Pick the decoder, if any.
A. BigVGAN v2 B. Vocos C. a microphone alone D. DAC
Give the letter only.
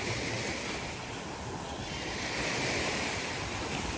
A